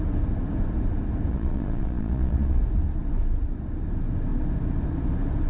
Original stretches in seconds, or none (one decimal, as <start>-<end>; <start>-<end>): 0.0-1.3; 2.6-5.5

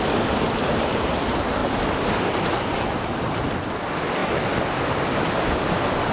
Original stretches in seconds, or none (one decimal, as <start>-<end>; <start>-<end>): 0.0-6.1